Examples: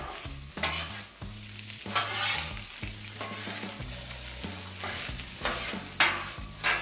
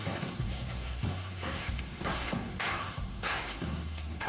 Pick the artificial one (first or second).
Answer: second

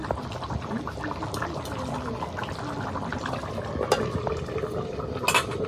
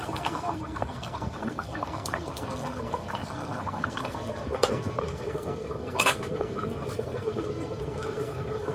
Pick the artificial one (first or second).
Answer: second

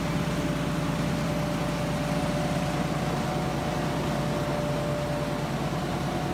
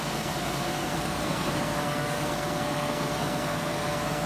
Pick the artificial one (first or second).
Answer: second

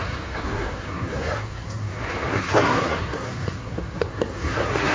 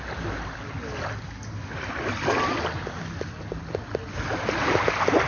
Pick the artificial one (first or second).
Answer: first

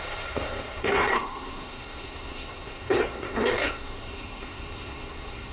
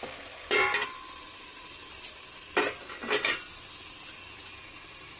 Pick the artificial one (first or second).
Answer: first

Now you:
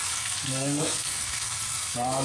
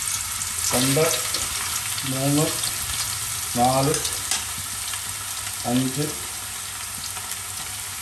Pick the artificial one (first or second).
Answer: first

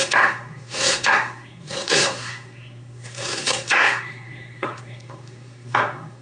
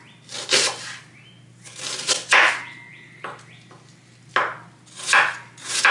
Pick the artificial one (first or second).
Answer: first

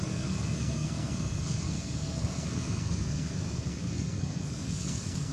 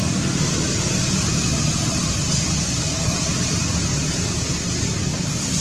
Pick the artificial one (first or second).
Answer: first